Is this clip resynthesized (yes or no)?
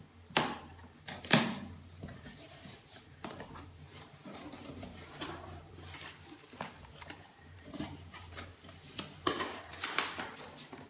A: yes